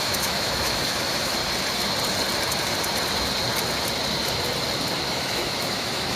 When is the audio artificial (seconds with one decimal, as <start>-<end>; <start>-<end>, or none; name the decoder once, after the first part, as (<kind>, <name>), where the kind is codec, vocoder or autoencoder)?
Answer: 0.0-1.4 (autoencoder, DAC-VAE); 5.1-6.2